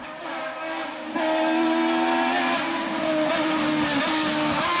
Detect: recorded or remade recorded